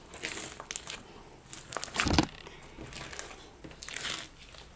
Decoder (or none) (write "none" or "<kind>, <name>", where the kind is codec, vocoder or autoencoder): none